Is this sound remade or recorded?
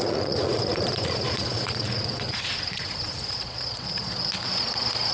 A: remade